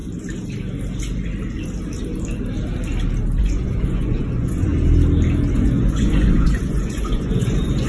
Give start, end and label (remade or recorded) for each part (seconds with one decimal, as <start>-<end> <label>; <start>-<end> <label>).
0.0-3.4 recorded; 3.4-4.7 remade; 4.7-5.5 recorded; 5.5-7.9 remade